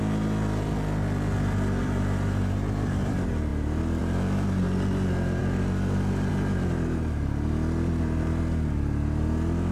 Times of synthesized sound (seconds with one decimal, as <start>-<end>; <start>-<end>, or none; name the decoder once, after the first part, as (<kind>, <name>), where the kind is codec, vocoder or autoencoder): 1.8-3.1 (vocoder, BigVGAN v2)